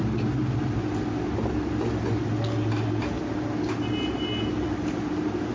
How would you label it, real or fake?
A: real